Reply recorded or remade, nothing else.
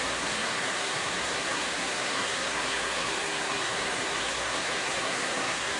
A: remade